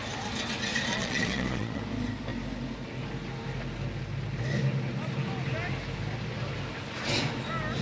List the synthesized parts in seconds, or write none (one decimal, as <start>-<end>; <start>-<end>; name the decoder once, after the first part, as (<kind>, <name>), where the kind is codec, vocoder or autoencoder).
0.9-1.8 (vocoder, Vocos)